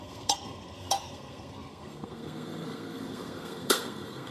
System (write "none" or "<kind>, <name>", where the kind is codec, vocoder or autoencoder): codec, SNAC